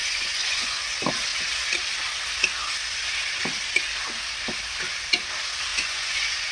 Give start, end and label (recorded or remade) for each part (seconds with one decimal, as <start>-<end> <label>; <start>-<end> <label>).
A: 0.0-0.8 remade; 0.8-5.7 recorded; 5.7-6.5 remade